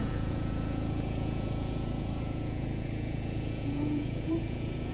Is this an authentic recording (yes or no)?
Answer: no